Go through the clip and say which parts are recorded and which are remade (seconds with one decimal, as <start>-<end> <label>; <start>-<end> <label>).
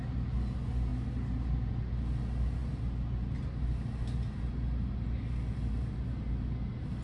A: 0.0-7.0 recorded